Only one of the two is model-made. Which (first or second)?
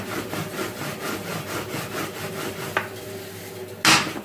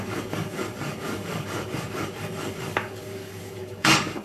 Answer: second